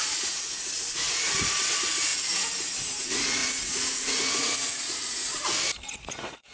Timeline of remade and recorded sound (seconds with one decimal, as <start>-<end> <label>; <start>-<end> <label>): 0.0-2.1 remade; 2.1-3.0 recorded; 3.0-5.3 remade; 5.3-5.9 recorded; 5.9-6.5 remade